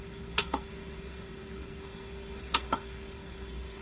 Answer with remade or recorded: remade